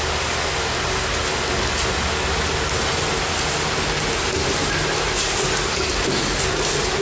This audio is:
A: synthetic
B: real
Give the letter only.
B